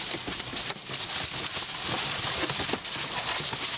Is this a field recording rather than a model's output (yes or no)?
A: yes